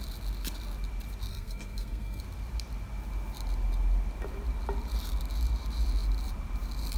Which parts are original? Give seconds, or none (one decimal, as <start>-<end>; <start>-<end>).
0.0-1.3; 2.2-7.0